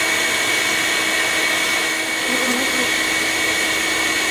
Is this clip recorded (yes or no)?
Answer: yes